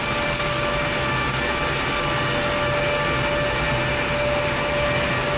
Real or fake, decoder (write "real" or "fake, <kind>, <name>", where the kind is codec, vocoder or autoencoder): real